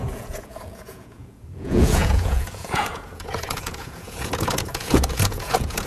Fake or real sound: fake